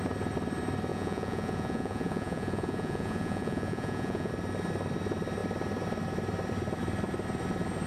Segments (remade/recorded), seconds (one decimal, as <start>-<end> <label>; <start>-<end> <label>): 0.0-0.9 recorded; 0.9-4.3 remade; 4.3-7.9 recorded